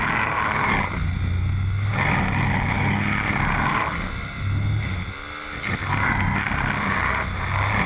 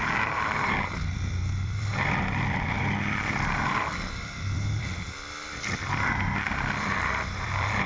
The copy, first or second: second